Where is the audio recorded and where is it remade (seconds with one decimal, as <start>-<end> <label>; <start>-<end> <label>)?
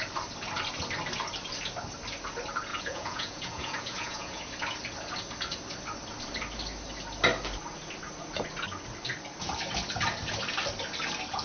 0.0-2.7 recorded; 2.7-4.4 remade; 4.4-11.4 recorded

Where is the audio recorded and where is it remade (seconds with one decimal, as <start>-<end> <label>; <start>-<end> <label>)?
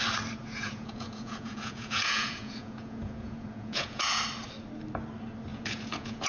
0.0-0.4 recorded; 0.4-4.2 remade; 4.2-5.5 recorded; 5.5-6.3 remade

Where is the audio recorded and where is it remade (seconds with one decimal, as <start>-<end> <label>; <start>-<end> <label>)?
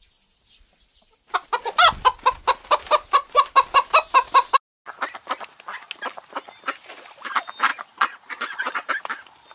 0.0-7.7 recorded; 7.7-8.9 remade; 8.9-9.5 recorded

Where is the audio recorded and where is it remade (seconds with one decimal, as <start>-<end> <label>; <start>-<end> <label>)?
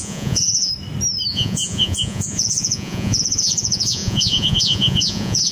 0.0-0.7 remade; 0.7-1.3 recorded; 1.3-5.5 remade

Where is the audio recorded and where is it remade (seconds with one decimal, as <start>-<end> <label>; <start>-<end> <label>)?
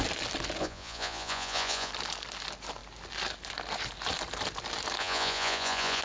0.0-0.6 recorded; 0.6-1.9 remade; 1.9-5.0 recorded; 5.0-6.0 remade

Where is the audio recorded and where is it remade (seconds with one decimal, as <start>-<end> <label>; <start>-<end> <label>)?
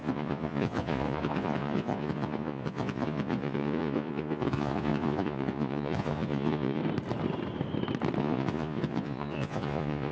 0.0-6.8 remade; 6.8-8.2 recorded; 8.2-10.1 remade